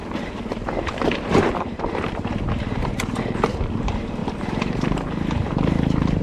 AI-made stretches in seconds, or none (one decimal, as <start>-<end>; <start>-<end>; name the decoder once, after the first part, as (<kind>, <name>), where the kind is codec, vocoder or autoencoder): 0.0-6.2 (vocoder, BigVGAN v2)